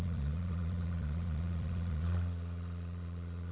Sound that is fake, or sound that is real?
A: fake